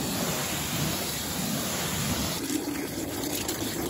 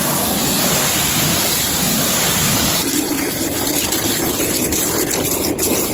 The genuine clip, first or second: first